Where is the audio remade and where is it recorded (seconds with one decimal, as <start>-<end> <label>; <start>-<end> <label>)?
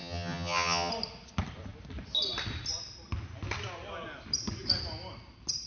0.0-0.9 remade; 0.9-5.7 recorded